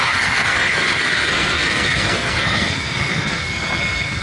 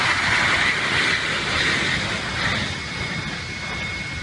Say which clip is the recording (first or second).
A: second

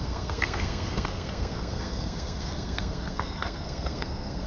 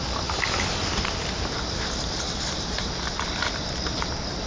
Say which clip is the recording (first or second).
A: second